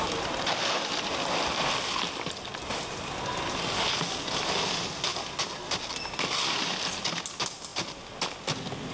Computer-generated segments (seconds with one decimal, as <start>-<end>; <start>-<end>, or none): none